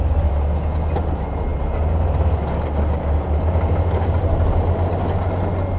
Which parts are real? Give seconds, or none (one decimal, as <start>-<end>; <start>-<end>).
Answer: 0.0-5.8